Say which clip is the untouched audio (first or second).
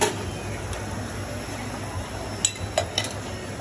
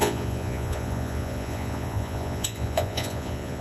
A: first